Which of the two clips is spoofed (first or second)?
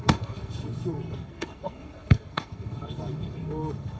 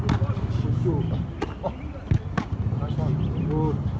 first